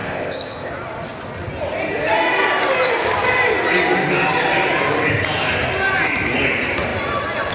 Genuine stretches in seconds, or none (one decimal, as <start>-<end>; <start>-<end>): 0.7-7.5